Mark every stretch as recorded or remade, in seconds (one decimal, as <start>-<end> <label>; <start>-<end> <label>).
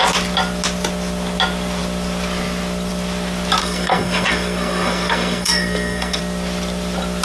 0.0-3.6 recorded; 3.6-6.2 remade; 6.2-7.2 recorded